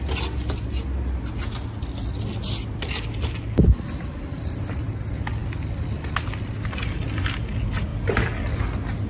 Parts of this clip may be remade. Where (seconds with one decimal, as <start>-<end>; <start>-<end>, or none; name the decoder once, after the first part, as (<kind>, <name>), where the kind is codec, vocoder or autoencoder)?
none